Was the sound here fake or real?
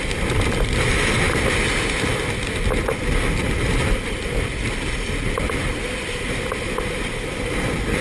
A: real